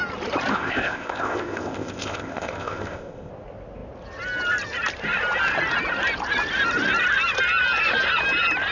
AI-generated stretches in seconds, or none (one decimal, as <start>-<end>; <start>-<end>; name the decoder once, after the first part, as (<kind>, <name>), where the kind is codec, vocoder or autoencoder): 0.5-3.3 (codec, ZipCodec)